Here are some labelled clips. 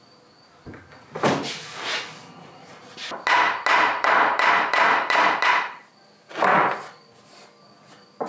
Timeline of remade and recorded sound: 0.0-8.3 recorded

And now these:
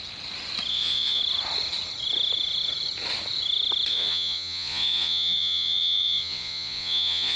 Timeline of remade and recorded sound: 0.0-0.7 recorded; 0.7-1.2 remade; 1.2-3.9 recorded; 3.9-7.4 remade

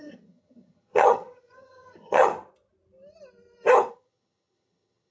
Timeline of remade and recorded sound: 0.0-2.3 remade; 2.3-3.9 recorded; 3.9-5.1 remade

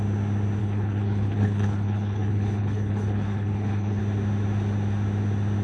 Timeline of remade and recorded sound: 0.0-0.6 recorded; 0.6-4.0 remade; 4.0-5.6 recorded